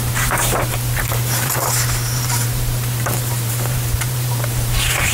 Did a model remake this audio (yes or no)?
yes